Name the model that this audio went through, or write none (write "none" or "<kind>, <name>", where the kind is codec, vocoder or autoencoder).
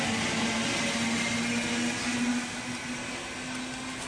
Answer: none